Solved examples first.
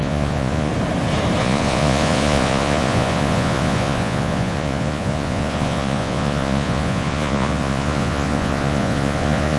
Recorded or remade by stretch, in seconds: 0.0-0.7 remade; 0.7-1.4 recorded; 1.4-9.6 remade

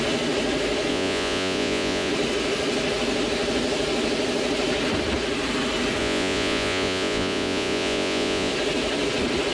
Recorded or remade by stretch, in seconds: 0.0-0.9 recorded; 0.9-2.1 remade; 2.1-6.0 recorded; 6.0-8.5 remade; 8.5-9.5 recorded

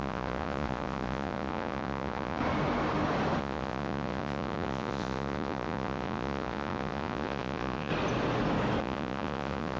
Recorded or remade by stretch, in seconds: 0.0-2.4 remade; 2.4-3.4 recorded; 3.4-7.9 remade; 7.9-8.8 recorded; 8.8-9.8 remade

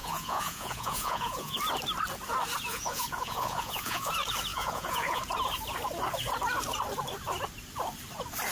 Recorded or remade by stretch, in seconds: 0.0-1.6 remade; 1.6-2.7 recorded; 2.7-4.1 remade; 4.1-4.5 recorded; 4.5-5.2 remade; 5.2-8.5 recorded

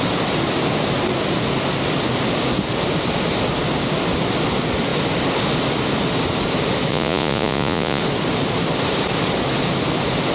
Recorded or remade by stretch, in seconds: 0.0-6.9 recorded; 6.9-8.0 remade; 8.0-10.3 recorded

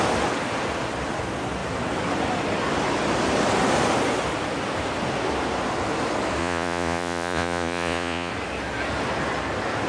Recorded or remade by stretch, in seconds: 0.0-6.4 recorded; 6.4-8.3 remade; 8.3-9.9 recorded

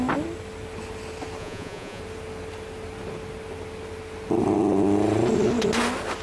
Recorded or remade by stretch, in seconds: 0.0-1.4 recorded; 1.4-2.0 remade; 2.0-6.2 recorded

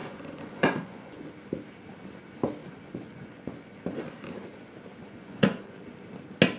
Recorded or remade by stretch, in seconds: 0.0-1.3 remade; 1.3-2.6 recorded; 2.6-3.8 remade; 3.8-5.0 recorded; 5.0-5.8 remade; 5.8-6.6 recorded